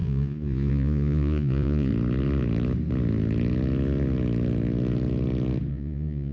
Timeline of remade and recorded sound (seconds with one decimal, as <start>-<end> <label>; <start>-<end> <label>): 0.0-1.9 remade; 1.9-5.7 recorded; 5.7-6.3 remade